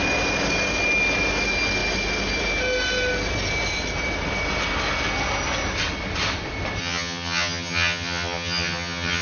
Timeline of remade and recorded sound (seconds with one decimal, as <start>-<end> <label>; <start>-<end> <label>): 0.0-6.8 recorded; 6.8-9.2 remade